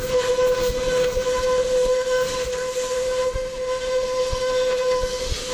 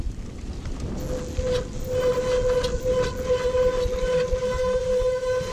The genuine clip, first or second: second